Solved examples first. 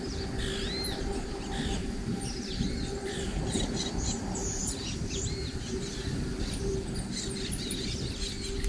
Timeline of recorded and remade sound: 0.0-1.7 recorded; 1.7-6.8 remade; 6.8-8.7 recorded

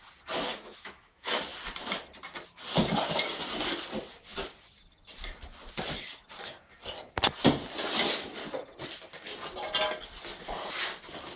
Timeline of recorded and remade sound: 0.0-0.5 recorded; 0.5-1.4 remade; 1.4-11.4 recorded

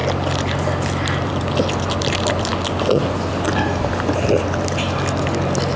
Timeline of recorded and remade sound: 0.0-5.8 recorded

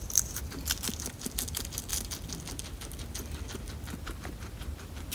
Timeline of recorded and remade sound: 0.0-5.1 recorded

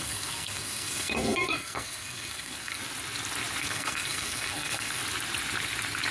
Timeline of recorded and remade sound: 0.0-2.8 remade; 2.8-3.6 recorded; 3.6-5.0 remade; 5.0-6.1 recorded